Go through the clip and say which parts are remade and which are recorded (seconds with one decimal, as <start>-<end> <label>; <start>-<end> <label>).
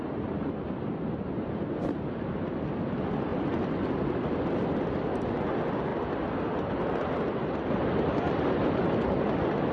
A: 0.0-3.3 recorded; 3.3-5.2 remade; 5.2-9.7 recorded